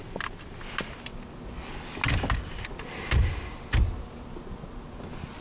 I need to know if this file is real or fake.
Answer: real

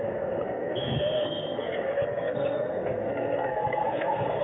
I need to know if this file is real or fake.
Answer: fake